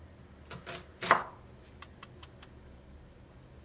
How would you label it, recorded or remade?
recorded